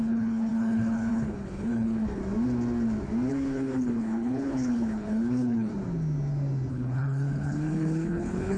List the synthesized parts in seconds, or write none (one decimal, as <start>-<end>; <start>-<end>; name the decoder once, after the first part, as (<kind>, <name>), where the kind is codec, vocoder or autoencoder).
0.0-2.2 (codec, HILCodec); 3.3-5.7; 6.7-8.6